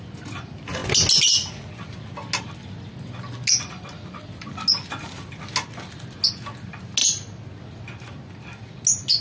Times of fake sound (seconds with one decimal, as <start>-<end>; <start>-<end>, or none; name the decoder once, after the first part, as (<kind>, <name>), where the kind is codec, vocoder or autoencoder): none